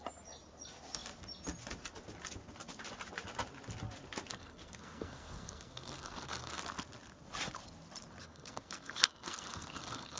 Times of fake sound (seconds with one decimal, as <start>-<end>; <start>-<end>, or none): 4.3-6.6; 8.2-10.2